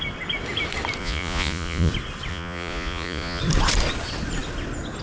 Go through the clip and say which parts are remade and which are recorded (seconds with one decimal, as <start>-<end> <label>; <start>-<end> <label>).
0.0-1.0 recorded; 1.0-1.9 remade; 1.9-2.3 recorded; 2.3-3.4 remade; 3.4-5.0 recorded